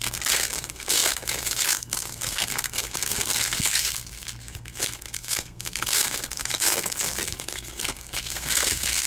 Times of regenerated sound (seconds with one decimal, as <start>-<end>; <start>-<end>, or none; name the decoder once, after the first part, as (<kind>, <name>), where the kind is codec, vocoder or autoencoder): 0.0-9.1 (codec, SNAC)